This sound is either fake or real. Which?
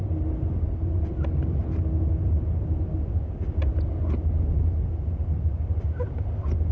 real